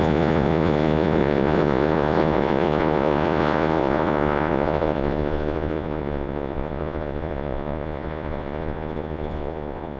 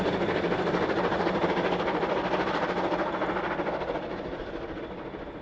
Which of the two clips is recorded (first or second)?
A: second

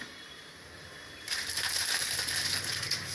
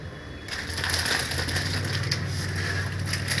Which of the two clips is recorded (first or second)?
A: second